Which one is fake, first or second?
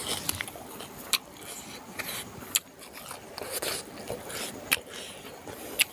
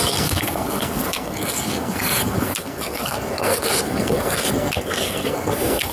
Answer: second